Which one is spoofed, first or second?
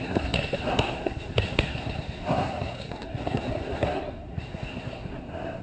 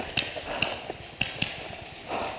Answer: first